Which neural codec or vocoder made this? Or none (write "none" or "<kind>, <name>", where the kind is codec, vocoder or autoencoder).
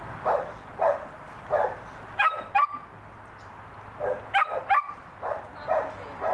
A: none